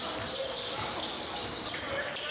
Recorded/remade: recorded